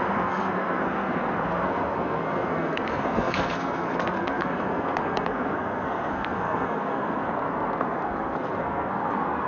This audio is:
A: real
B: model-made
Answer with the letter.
B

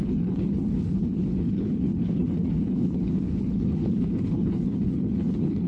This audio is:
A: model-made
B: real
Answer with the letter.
A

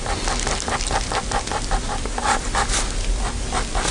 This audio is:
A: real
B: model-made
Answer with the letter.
A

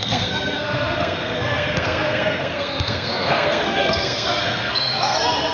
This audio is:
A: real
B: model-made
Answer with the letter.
B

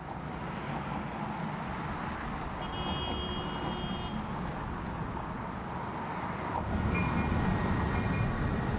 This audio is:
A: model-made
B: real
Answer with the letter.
B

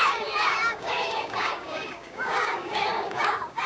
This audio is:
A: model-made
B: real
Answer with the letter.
A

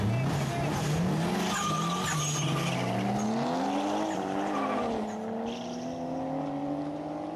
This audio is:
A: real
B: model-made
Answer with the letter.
A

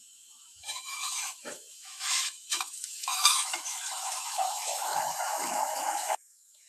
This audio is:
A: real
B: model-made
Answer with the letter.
B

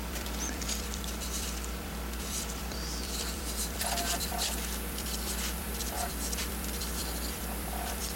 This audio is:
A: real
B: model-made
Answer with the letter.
B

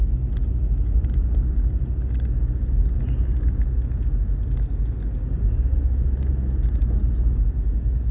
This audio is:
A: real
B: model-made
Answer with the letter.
A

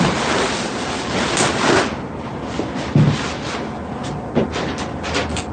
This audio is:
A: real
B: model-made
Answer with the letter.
A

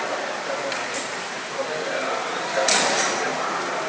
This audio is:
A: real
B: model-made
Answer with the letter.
B